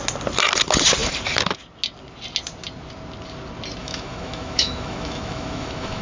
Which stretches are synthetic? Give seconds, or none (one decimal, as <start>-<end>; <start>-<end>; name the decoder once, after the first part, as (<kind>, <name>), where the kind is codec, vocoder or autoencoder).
3.8-6.0 (autoencoder, DAC-VAE)